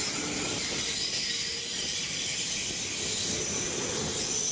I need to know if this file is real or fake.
real